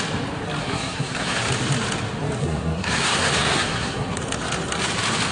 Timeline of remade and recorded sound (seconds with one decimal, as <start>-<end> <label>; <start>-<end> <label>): 0.0-0.6 recorded; 0.6-1.4 remade; 1.4-2.4 recorded; 2.4-4.2 remade; 4.2-5.3 recorded